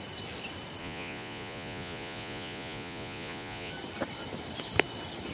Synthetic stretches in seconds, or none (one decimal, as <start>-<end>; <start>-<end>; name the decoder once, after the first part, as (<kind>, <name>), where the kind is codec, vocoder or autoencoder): 0.8-3.7 (vocoder, Vocos)